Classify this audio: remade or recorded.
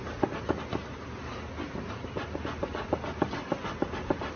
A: recorded